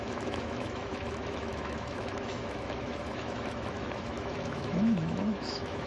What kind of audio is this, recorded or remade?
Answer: remade